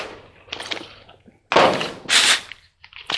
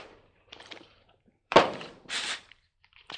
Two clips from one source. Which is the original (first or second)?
first